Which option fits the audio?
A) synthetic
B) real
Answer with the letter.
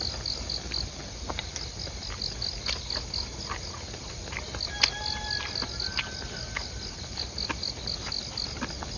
B